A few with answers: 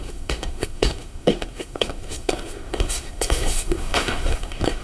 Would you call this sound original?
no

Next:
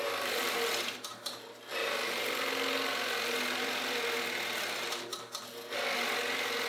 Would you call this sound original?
yes